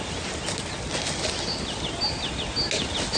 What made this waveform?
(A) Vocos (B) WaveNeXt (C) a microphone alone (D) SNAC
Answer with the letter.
C